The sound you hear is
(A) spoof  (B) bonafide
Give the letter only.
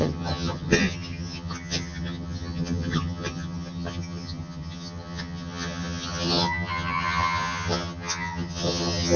A